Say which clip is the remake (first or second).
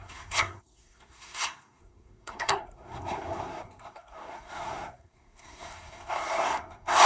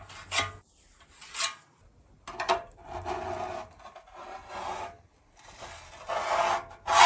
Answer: first